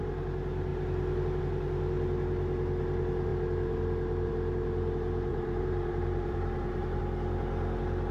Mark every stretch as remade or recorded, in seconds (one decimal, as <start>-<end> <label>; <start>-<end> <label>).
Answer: 0.0-5.3 recorded; 5.3-7.0 remade; 7.0-8.1 recorded